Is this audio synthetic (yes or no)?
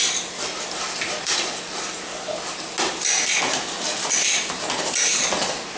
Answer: no